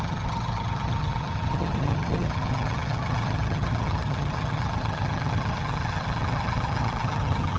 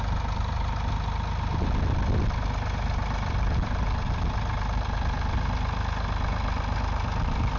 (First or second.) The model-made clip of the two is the first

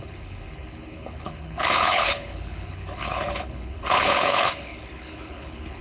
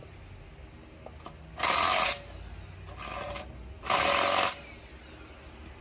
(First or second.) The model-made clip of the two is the first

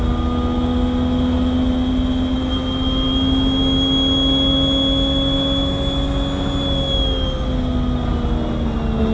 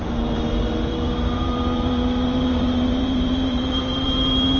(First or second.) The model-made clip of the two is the second